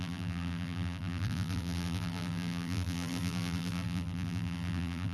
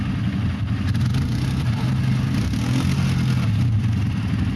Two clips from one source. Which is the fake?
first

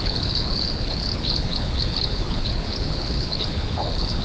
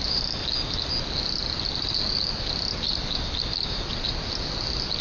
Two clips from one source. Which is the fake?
first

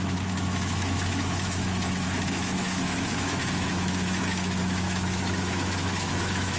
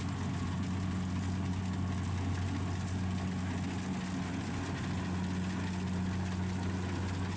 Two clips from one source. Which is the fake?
first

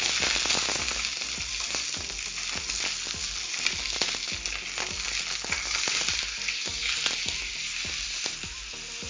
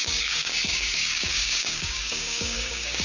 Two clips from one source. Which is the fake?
second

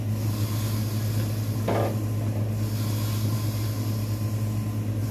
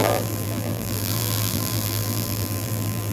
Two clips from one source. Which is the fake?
second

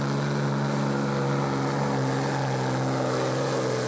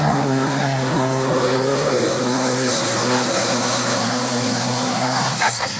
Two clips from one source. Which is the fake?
second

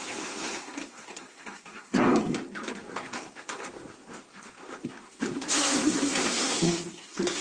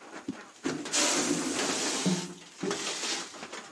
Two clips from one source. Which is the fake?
first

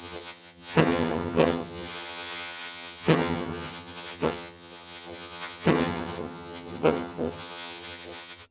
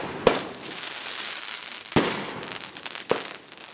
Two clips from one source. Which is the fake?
first